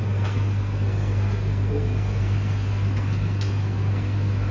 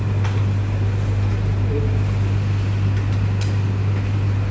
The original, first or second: second